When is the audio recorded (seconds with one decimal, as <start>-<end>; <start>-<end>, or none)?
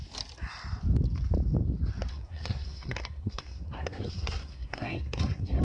0.0-2.1